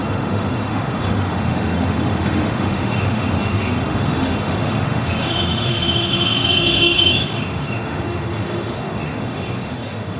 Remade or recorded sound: remade